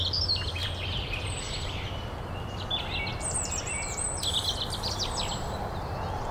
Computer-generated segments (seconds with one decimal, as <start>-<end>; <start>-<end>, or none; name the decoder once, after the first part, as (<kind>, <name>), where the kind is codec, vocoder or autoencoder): 0.0-6.3 (vocoder, BigVGAN v2)